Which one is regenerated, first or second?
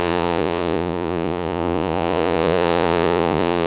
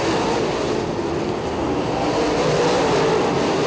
first